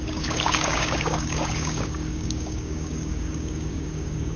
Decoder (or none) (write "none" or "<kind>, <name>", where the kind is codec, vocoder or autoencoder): codec, DAC